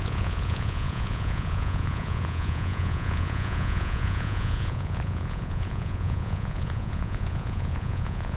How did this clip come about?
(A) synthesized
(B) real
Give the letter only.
A